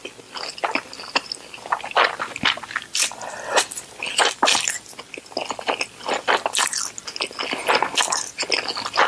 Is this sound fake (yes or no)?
no